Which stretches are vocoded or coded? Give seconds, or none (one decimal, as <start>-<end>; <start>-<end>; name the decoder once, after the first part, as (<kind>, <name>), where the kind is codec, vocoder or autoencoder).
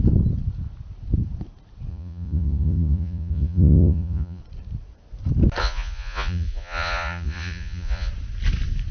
1.9-4.4 (vocoder, Vocos); 5.6-8.1